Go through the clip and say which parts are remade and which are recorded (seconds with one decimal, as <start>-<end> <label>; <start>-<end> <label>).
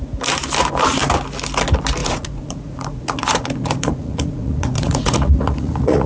0.0-2.0 recorded; 2.0-6.1 remade